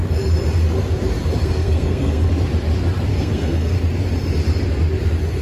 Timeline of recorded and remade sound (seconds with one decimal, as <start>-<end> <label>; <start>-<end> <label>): 0.0-1.4 recorded; 1.4-2.3 remade; 2.3-3.1 recorded; 3.1-3.8 remade; 3.8-5.4 recorded